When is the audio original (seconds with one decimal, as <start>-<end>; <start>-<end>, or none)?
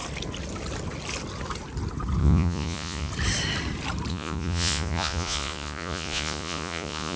0.0-2.2; 3.1-4.1